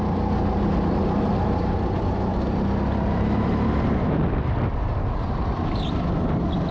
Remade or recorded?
recorded